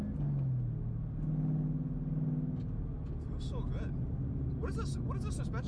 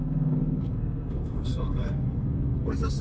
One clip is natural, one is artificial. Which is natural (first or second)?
first